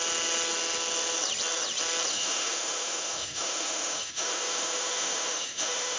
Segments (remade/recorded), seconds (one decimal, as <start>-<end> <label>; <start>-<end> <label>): 0.0-2.1 recorded; 2.1-6.0 remade